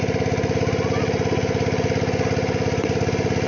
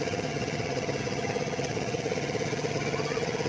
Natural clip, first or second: first